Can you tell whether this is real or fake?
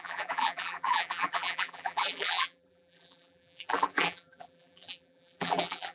fake